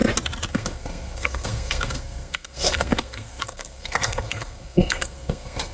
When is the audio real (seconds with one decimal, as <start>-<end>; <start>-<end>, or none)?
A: 0.0-0.5